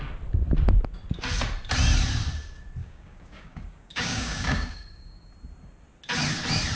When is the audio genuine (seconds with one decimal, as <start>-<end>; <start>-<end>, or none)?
0.0-2.8; 5.3-6.8